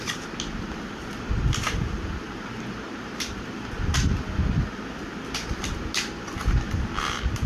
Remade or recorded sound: recorded